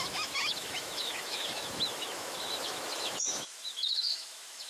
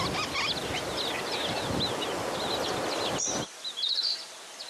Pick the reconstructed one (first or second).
first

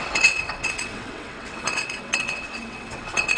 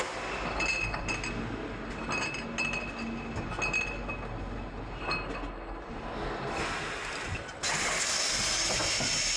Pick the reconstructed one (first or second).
first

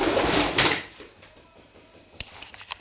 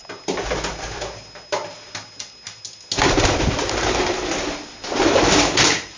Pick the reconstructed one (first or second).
first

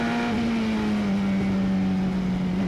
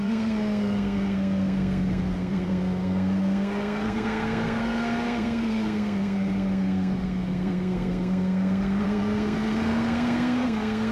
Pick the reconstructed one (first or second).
second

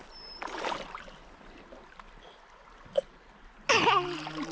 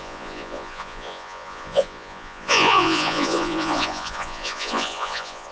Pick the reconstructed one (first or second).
second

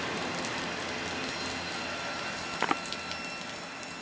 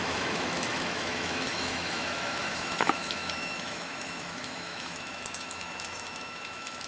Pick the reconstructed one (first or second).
second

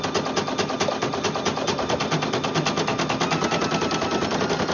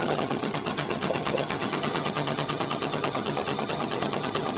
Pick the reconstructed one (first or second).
second